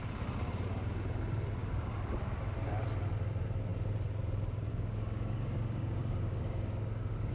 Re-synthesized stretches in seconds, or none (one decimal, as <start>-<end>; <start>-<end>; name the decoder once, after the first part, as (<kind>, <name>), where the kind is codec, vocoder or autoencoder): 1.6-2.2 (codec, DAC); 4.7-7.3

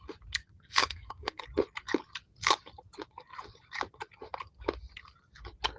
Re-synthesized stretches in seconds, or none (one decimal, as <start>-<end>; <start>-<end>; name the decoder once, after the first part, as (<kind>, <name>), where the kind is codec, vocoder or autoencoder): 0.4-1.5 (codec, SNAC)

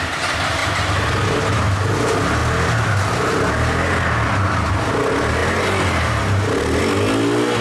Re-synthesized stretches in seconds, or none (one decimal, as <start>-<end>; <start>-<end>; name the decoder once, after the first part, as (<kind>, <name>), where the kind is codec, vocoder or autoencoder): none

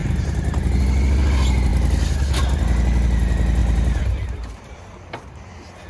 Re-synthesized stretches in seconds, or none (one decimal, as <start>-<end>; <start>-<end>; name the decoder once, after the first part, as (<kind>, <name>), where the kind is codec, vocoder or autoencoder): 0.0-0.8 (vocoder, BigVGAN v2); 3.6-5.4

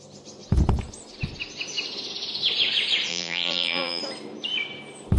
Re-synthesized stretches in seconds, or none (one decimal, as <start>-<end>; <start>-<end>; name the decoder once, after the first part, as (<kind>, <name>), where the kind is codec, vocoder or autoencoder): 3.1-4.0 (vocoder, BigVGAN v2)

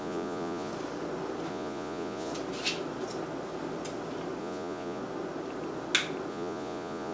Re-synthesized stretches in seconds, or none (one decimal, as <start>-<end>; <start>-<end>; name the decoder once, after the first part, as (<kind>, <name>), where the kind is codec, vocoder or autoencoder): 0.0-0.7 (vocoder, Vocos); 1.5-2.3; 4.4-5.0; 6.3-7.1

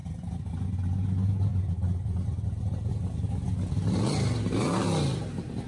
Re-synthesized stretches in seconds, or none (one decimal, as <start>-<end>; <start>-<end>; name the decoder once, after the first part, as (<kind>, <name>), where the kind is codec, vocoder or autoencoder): 0.0-0.6 (vocoder, BigVGAN v2)

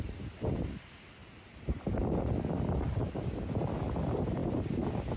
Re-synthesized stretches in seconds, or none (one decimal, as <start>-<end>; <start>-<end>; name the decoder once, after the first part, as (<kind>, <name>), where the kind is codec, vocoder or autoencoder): none